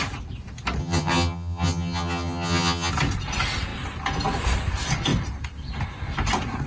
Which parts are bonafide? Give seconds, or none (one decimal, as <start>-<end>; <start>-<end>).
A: 0.0-0.8; 2.9-6.7